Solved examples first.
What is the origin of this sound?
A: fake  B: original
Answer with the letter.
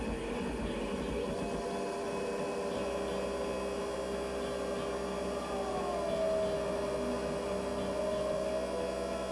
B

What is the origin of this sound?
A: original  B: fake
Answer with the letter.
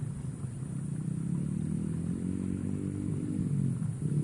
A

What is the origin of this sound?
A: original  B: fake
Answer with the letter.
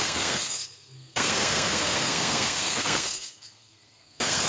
B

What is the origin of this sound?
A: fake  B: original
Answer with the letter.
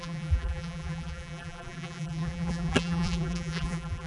A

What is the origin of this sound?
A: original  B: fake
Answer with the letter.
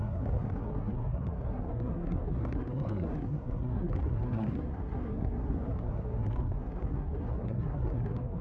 B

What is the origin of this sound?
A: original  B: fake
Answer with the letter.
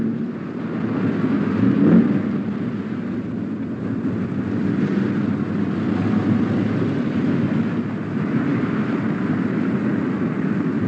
A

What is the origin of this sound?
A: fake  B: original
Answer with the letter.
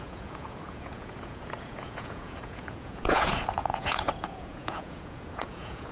A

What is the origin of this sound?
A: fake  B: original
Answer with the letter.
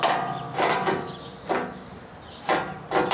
B